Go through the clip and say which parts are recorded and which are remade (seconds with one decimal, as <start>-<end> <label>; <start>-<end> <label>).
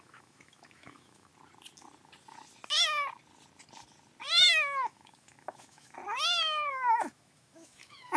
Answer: 0.0-1.3 remade; 1.3-4.3 recorded; 4.3-6.0 remade; 6.0-6.7 recorded; 6.7-8.2 remade